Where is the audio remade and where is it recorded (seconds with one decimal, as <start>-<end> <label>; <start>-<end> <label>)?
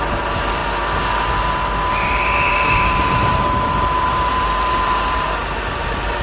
0.0-0.6 remade; 0.6-1.9 recorded; 1.9-6.2 remade